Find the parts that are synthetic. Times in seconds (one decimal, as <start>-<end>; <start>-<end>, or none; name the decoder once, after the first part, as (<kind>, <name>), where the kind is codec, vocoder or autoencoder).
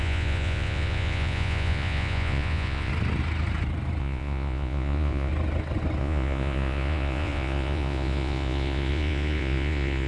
0.0-2.9 (vocoder, Vocos); 4.0-5.3; 6.0-10.1